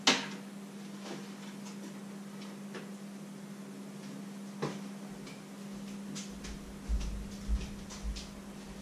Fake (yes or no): no